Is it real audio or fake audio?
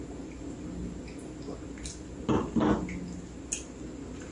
real